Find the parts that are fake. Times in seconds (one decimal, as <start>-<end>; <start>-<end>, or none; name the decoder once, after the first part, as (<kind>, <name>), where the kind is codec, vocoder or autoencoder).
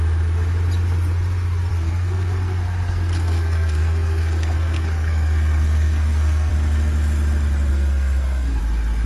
1.7-6.5 (codec, SNAC); 7.7-8.6